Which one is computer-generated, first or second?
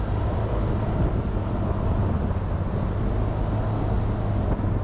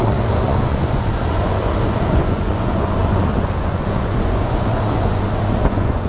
second